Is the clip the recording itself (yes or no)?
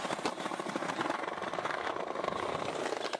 yes